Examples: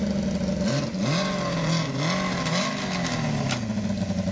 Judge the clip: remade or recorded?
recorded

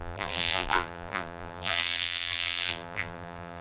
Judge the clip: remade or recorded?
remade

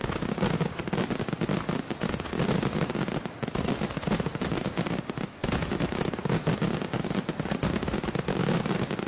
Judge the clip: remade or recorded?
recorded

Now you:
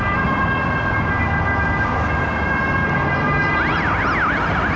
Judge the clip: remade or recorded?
recorded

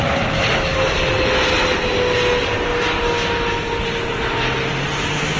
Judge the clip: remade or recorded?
recorded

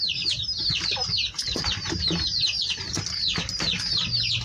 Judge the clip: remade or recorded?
remade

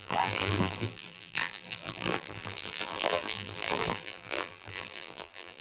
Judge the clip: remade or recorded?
remade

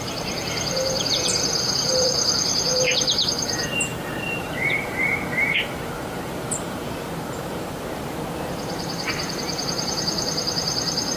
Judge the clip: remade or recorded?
remade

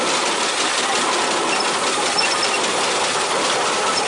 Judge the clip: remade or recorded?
recorded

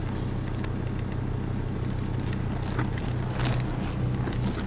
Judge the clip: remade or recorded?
recorded